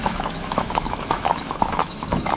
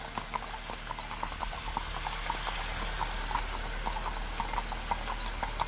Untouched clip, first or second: second